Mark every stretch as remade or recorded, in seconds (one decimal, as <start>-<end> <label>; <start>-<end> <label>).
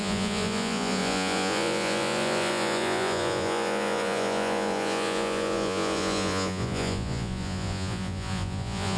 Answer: 0.0-9.0 remade